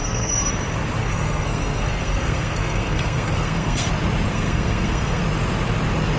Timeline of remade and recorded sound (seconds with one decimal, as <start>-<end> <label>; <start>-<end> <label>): 0.0-0.5 remade; 0.5-1.0 recorded; 1.0-3.9 remade; 3.9-4.3 recorded; 4.3-5.2 remade; 5.2-6.2 recorded